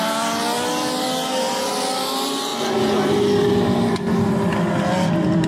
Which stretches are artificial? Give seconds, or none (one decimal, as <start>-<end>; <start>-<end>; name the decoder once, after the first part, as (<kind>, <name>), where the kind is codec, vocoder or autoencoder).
none